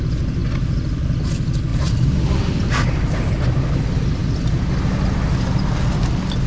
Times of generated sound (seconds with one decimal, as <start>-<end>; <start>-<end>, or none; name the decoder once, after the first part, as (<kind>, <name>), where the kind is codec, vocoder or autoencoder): 1.7-3.3 (vocoder, BigVGAN v2)